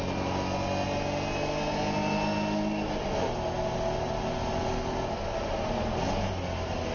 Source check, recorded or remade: recorded